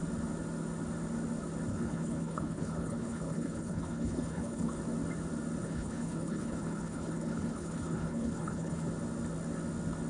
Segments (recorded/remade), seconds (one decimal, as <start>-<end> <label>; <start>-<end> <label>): 0.0-1.7 recorded; 1.7-4.8 remade; 4.8-5.6 recorded; 5.6-8.9 remade; 8.9-10.1 recorded